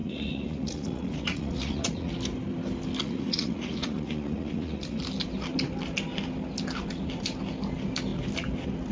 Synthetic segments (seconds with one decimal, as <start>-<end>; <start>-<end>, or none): 0.0-2.1; 3.0-5.0